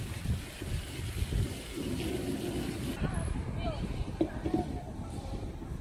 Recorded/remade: recorded